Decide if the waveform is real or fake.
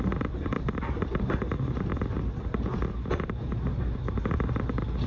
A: real